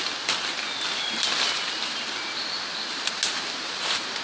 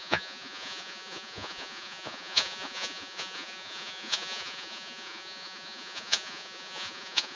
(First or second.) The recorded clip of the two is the first